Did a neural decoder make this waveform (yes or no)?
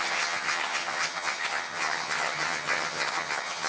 yes